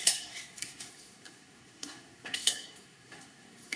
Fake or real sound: fake